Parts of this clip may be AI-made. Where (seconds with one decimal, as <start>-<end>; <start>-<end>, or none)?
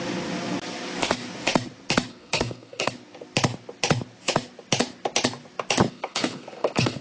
2.1-2.9; 5.9-7.0